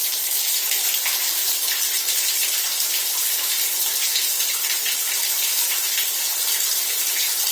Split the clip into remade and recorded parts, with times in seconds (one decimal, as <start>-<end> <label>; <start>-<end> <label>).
0.0-1.4 recorded; 1.4-2.0 remade; 2.0-6.3 recorded; 6.3-7.5 remade